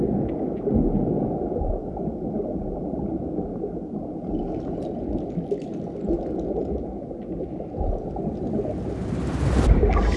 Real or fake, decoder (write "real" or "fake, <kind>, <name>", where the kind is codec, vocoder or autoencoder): real